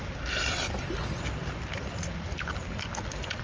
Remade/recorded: recorded